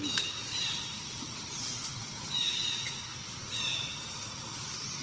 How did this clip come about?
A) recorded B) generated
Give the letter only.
A